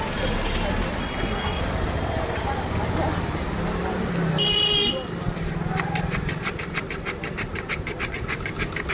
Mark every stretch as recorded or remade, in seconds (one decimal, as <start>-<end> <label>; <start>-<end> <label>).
0.0-1.0 recorded; 1.0-1.6 remade; 1.6-8.9 recorded